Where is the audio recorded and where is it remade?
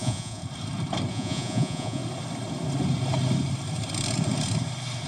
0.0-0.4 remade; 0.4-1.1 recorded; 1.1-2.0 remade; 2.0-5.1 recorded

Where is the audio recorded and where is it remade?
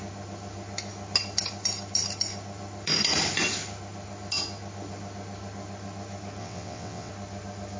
0.0-6.4 recorded; 6.4-7.1 remade; 7.1-7.8 recorded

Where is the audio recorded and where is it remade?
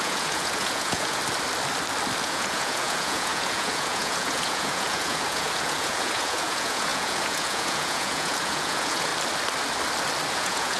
0.0-1.2 remade; 1.2-2.2 recorded; 2.2-9.1 remade; 9.1-10.3 recorded; 10.3-10.8 remade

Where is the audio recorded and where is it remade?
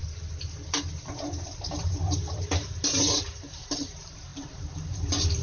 0.0-1.7 recorded; 1.7-5.4 remade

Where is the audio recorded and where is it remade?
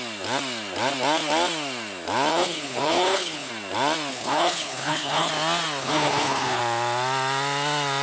0.0-2.3 recorded; 2.3-3.5 remade; 3.5-4.1 recorded; 4.1-5.3 remade; 5.3-5.8 recorded; 5.8-6.6 remade; 6.6-8.0 recorded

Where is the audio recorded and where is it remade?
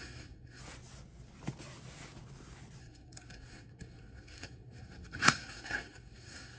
0.0-0.6 remade; 0.6-2.8 recorded; 2.8-6.6 remade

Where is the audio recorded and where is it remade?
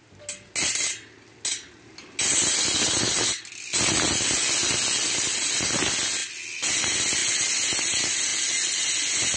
0.0-9.4 recorded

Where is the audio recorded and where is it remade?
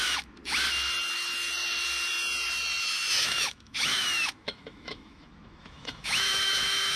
0.0-0.4 remade; 0.4-2.8 recorded; 2.8-7.0 remade